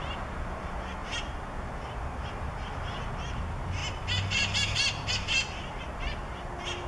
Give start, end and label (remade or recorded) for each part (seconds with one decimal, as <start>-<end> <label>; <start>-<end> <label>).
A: 0.0-6.9 recorded